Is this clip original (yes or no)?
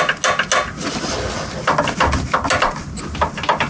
yes